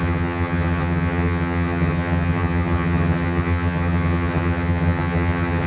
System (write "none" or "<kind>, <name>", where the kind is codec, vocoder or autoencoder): vocoder, HiFi-GAN